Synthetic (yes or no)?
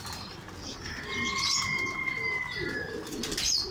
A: no